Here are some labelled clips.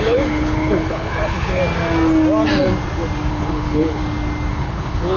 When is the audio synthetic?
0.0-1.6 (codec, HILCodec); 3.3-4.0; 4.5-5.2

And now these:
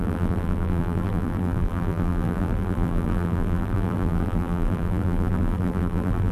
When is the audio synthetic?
0.0-6.3 (vocoder, BigVGAN v2)

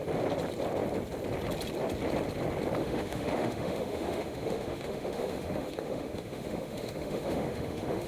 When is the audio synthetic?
2.8-8.1 (autoencoder, DAC-VAE)

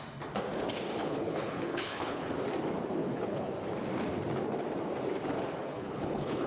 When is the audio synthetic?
1.0-2.3 (codec, HILCodec); 3.0-3.5; 5.6-6.5

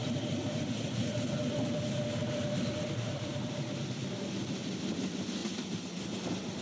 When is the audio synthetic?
none

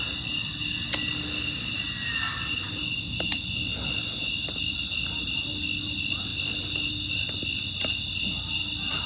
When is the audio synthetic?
none

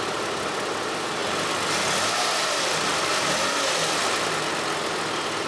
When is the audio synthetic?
none